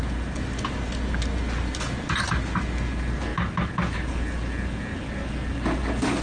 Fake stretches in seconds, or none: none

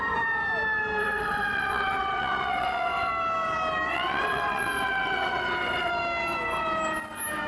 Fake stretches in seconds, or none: 1.0-3.1 (vocoder, WaveNeXt); 3.9-5.9

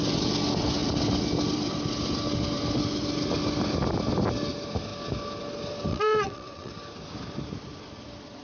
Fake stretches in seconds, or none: 5.9-6.7 (vocoder, WaveNeXt)

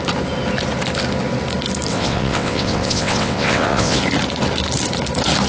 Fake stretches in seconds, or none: 1.9-4.0 (vocoder, WaveNeXt)

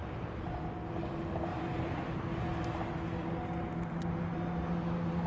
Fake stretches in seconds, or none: none